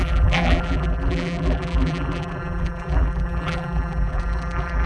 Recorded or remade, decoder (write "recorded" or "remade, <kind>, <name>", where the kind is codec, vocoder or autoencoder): remade, vocoder, BigVGAN v2